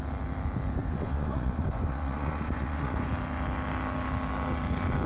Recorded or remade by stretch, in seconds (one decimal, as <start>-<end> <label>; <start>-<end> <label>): 0.0-0.8 recorded; 0.8-3.1 remade; 3.1-5.1 recorded